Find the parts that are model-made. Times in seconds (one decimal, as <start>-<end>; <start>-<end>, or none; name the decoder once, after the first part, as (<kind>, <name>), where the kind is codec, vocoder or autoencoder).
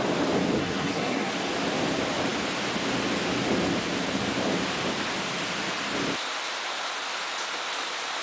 0.6-1.3 (codec, SNAC)